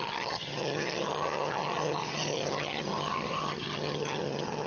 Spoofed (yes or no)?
yes